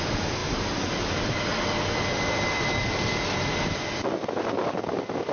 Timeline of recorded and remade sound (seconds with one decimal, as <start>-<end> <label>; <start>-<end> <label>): 0.0-5.3 recorded